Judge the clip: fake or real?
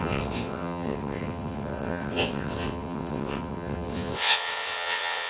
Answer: fake